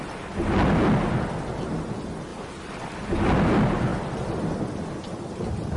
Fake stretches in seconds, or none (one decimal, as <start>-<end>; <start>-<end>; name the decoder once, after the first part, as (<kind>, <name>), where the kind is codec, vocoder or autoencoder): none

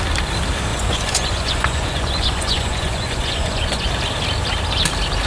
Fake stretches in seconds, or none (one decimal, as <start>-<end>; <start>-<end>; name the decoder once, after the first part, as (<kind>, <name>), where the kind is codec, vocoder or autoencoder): 0.7-3.9 (vocoder, Vocos)

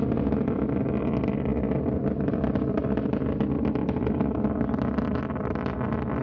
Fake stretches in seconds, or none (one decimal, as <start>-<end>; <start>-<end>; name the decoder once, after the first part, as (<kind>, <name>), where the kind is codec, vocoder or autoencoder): none

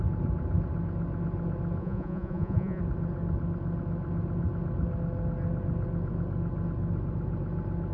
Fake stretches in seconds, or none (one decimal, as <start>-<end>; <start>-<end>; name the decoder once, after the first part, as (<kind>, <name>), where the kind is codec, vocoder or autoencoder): 1.8-2.8 (vocoder, Vocos)